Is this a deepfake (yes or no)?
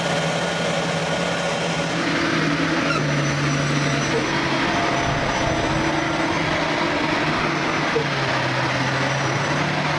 no